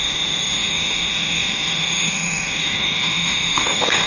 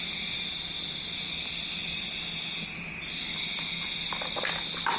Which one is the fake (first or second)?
first